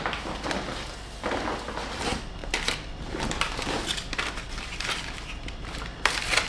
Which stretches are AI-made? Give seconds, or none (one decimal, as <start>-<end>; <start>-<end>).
0.0-2.4; 4.5-6.5